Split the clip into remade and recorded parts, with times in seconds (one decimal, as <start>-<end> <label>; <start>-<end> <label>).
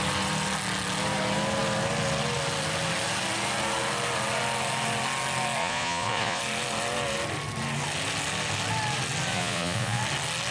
0.0-5.6 recorded; 5.6-6.4 remade; 6.4-9.3 recorded; 9.3-10.0 remade; 10.0-10.5 recorded